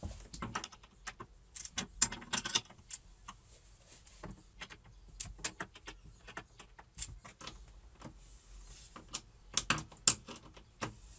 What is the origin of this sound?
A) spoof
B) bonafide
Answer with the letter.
B